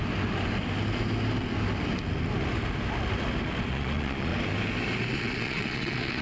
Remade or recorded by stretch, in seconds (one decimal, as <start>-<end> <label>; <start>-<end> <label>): 0.0-3.7 recorded; 3.7-4.3 remade; 4.3-5.1 recorded; 5.1-6.2 remade